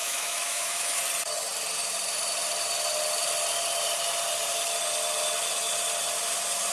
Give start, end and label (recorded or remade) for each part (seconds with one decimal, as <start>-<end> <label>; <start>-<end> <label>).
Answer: 0.0-1.0 remade; 1.0-6.7 recorded